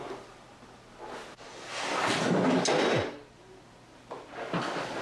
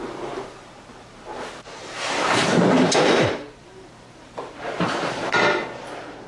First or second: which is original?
first